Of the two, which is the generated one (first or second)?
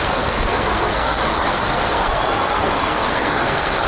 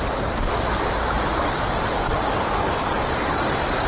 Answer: first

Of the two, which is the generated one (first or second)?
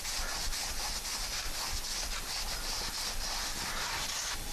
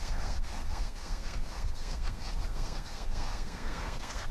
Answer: second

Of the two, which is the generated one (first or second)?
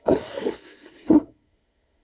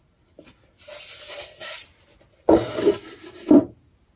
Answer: first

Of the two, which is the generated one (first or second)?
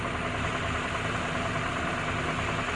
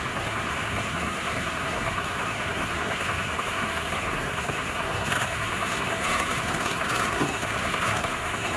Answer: second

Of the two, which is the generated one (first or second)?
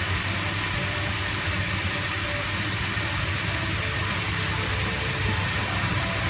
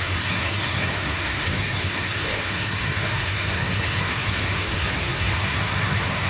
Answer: second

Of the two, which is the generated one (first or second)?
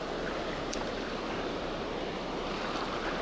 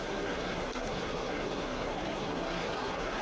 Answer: second